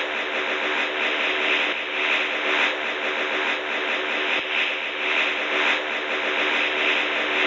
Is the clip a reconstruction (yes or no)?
no